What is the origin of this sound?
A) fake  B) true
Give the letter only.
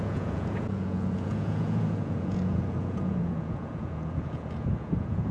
A